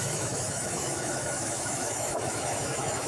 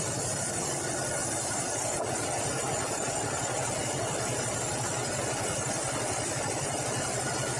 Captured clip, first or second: second